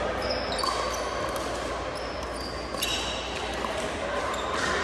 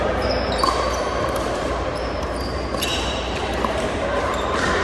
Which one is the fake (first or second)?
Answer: second